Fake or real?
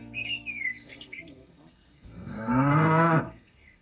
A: fake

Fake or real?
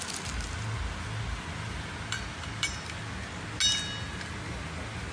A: real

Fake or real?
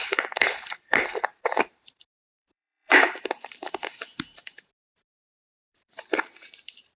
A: fake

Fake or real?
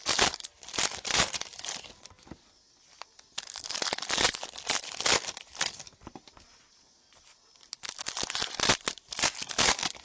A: real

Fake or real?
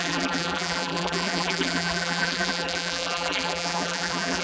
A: fake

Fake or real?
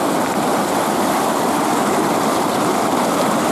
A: real